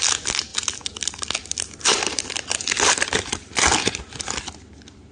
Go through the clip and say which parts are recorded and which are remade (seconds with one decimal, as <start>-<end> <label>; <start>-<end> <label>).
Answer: 0.0-5.1 recorded